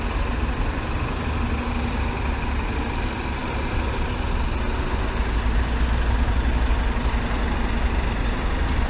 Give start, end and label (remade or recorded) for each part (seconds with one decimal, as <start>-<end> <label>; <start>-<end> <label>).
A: 0.0-8.9 recorded